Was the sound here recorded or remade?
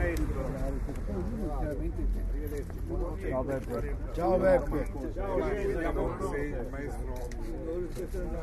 recorded